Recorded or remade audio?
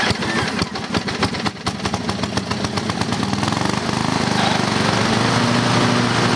recorded